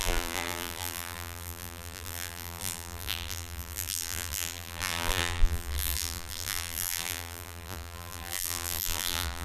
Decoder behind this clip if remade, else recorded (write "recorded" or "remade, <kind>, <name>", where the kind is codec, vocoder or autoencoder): remade, vocoder, BigVGAN v2